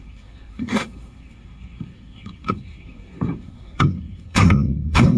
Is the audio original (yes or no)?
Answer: no